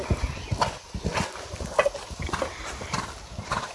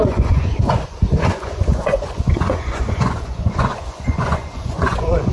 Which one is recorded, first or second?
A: first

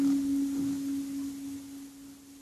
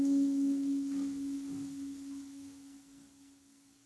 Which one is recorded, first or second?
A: first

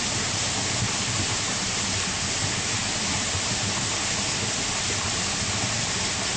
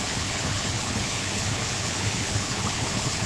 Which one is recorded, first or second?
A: first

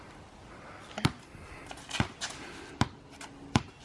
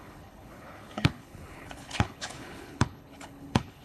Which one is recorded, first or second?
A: first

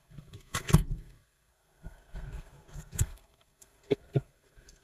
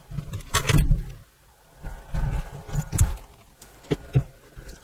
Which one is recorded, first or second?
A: second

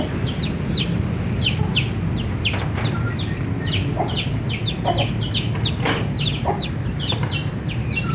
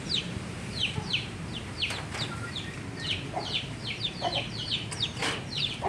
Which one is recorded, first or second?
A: first